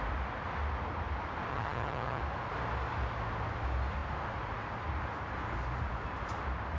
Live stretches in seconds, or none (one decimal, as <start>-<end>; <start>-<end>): 0.0-1.5; 2.2-6.8